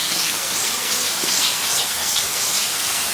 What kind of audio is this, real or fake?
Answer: fake